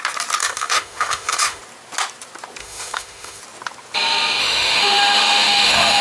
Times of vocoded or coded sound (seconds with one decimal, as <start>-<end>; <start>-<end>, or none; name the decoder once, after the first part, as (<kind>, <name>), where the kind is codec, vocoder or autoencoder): 0.4-1.6 (autoencoder, DAC-VAE); 2.6-3.4; 4.4-6.0